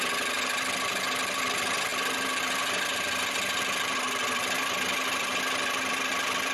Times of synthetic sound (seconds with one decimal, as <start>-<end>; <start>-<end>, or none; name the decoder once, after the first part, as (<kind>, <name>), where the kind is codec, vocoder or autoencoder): 0.0-6.5 (vocoder, BigVGAN v2)